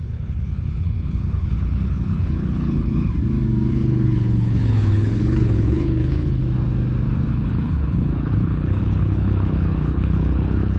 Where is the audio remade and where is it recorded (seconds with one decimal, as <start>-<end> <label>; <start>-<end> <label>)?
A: 0.0-3.1 remade; 3.1-3.7 recorded; 3.7-6.4 remade; 6.4-7.3 recorded; 7.3-10.8 remade